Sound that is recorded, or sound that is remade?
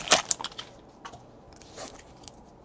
recorded